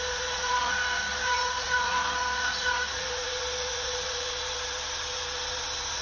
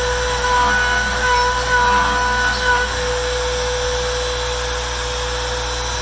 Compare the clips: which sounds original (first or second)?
second